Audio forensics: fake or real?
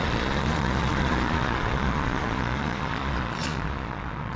fake